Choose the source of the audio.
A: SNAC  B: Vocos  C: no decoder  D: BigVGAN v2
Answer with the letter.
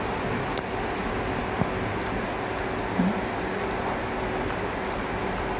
C